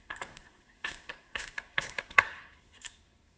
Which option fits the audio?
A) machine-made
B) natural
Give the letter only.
A